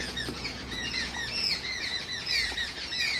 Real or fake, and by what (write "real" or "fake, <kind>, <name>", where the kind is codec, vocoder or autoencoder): fake, vocoder, Vocos